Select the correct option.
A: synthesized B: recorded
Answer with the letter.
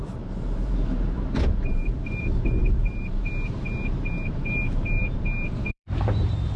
A